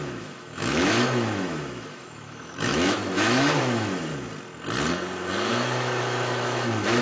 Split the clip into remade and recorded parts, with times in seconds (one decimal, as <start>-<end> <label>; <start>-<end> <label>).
0.0-4.1 remade; 4.1-5.5 recorded; 5.5-7.0 remade